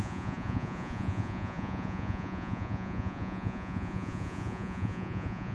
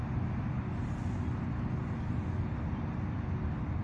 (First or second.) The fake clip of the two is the first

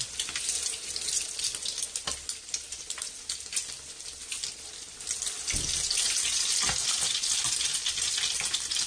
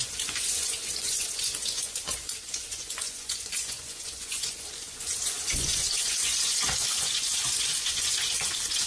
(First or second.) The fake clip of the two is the second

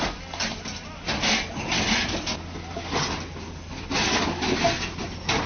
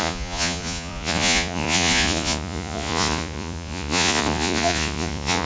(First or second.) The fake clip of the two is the second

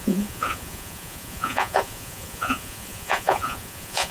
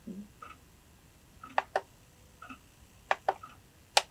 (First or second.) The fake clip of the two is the first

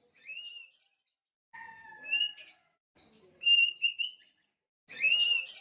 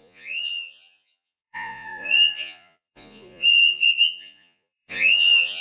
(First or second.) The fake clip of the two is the second